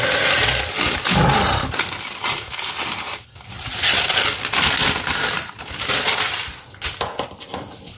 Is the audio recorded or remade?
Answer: recorded